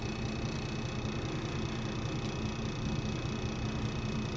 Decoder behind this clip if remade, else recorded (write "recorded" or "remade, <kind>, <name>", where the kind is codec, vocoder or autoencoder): recorded